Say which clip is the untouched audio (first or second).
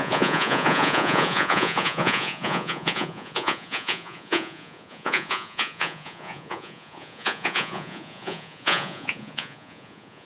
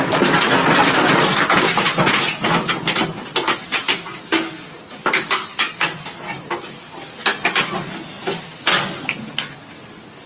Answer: second